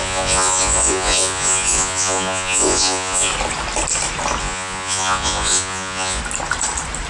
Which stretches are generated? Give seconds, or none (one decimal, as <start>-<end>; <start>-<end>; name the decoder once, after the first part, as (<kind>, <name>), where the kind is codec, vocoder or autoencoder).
0.0-3.3 (vocoder, Vocos); 4.4-6.2